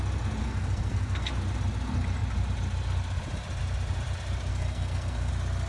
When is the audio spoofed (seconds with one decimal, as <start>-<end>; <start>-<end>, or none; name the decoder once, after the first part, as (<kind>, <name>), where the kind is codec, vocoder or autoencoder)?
0.4-1.3 (codec, SNAC); 4.5-5.3